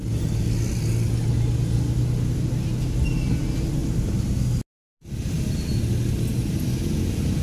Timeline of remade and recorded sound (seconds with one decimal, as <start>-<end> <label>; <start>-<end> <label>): 0.0-7.4 recorded